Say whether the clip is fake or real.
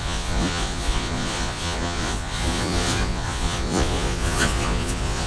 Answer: fake